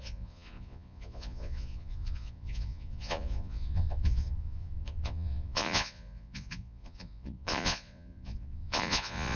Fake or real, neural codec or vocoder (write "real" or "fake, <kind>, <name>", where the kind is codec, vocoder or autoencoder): fake, vocoder, Vocos